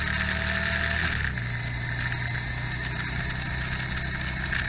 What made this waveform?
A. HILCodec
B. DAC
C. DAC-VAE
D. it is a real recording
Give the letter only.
D